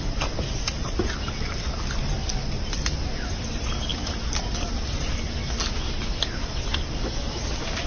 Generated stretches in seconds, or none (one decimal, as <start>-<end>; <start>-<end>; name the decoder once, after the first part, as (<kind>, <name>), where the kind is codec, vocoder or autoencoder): none